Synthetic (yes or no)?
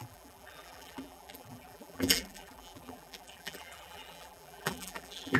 yes